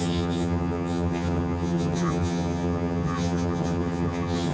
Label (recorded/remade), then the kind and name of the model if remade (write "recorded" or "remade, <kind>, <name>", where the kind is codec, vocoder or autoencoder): remade, vocoder, HiFi-GAN